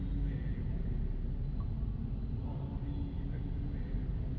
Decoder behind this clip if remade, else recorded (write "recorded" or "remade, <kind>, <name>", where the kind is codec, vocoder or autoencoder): recorded